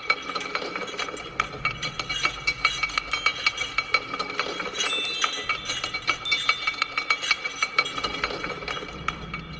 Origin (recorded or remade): recorded